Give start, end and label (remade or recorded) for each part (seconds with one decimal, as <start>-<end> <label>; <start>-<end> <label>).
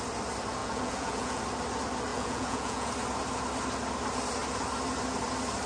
0.0-0.6 recorded; 0.6-1.4 remade; 1.4-2.1 recorded; 2.1-2.9 remade; 2.9-5.7 recorded